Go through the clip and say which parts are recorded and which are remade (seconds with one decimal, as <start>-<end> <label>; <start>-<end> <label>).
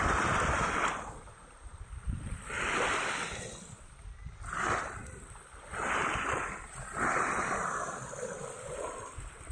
0.0-9.5 recorded